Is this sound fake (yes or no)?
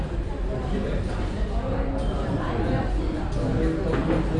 no